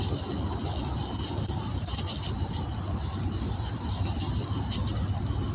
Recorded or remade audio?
recorded